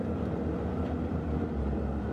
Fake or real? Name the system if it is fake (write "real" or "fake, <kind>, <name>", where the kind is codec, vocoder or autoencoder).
real